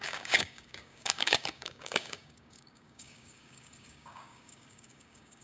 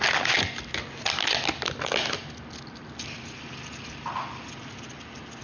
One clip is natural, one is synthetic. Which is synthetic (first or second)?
first